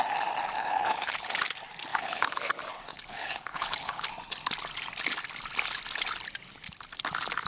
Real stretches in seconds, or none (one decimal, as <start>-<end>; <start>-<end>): 0.0-0.6; 1.4-1.9; 2.5-2.9; 4.1-7.5